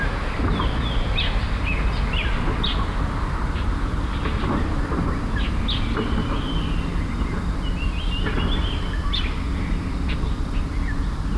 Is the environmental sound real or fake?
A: real